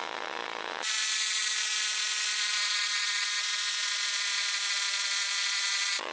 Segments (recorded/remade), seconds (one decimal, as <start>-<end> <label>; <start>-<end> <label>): 0.0-6.1 remade